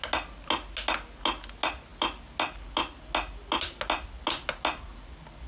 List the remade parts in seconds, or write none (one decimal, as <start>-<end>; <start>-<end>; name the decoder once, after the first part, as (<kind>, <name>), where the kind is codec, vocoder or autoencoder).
none